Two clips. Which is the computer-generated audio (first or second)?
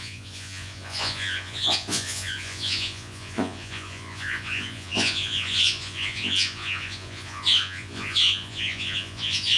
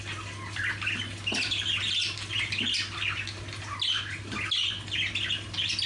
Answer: first